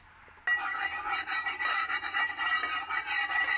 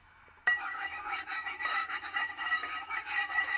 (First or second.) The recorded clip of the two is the first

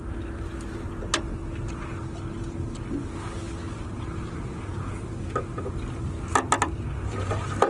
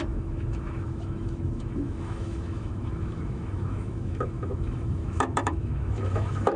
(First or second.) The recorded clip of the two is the first